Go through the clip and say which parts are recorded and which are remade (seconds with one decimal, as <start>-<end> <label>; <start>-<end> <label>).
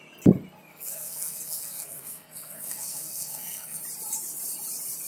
0.0-0.7 recorded; 0.7-3.8 remade; 3.8-5.1 recorded